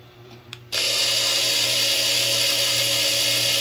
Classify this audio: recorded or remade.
recorded